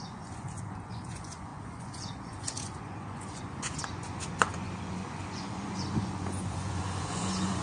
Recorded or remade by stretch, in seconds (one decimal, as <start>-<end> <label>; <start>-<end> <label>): 0.0-7.6 remade